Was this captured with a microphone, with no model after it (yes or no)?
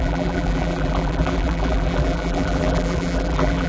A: no